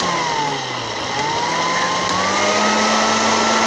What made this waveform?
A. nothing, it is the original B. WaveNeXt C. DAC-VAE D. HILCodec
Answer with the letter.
A